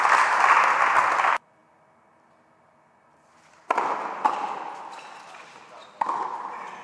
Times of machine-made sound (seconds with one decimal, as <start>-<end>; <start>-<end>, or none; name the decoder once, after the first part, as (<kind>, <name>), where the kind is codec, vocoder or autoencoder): none